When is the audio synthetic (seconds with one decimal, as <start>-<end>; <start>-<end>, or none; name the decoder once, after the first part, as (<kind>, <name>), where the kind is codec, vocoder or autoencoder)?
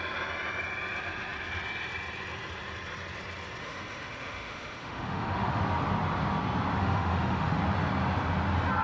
3.6-5.6 (autoencoder, DAC-VAE); 6.8-7.6